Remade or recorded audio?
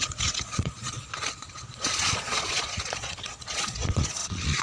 remade